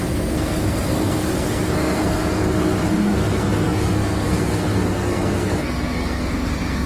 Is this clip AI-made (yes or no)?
yes